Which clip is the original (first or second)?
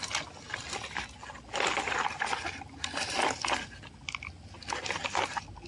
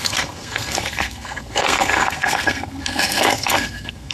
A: first